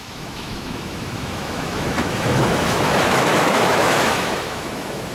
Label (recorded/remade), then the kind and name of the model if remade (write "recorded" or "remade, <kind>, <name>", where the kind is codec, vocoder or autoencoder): remade, autoencoder, DAC-VAE